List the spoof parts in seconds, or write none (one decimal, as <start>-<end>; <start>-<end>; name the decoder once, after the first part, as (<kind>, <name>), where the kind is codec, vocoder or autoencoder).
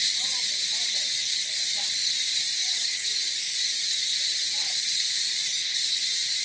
2.6-3.1 (vocoder, HiFi-GAN)